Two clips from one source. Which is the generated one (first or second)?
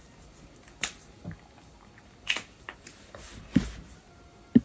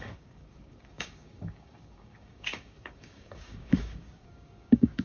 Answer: second